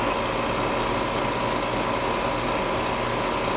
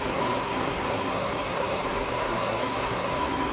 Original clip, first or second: first